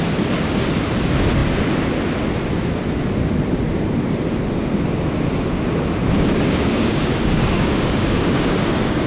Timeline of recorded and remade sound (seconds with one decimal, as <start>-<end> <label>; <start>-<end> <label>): 0.0-6.0 recorded; 6.0-9.1 remade